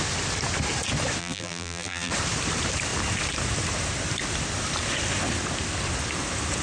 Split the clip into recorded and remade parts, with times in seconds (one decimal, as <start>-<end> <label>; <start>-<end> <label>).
0.0-1.2 recorded; 1.2-2.1 remade; 2.1-6.6 recorded